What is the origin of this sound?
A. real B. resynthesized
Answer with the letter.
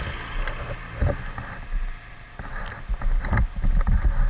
A